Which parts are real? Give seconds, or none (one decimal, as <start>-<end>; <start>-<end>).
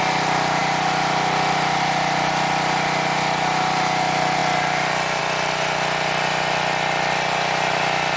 0.0-8.2